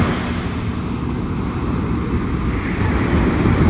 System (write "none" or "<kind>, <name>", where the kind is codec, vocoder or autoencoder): none